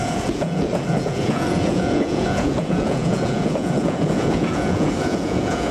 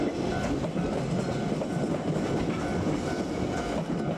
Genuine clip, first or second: second